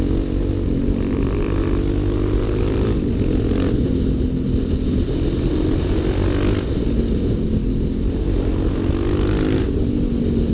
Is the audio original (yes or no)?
yes